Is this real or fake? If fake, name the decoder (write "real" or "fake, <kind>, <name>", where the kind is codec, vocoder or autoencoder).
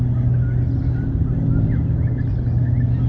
real